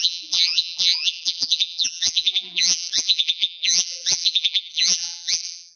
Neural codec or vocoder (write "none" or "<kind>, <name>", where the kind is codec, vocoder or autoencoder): vocoder, BigVGAN v2